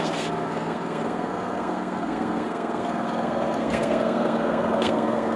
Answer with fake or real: fake